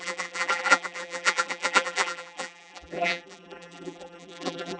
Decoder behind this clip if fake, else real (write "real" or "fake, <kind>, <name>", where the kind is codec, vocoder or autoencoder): fake, vocoder, BigVGAN v2